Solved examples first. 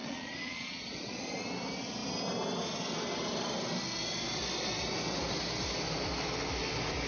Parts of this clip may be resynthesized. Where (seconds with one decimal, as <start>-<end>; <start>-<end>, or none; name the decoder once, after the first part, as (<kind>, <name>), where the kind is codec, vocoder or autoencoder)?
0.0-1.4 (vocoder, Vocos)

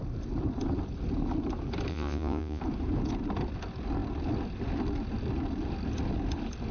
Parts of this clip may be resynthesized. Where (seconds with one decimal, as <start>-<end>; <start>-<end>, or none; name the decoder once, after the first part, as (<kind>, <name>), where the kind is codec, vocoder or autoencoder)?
1.9-2.6 (vocoder, Vocos)

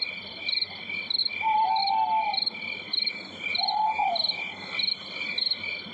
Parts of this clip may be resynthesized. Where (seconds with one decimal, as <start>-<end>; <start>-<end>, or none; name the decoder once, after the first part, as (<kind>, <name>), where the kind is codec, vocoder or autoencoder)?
none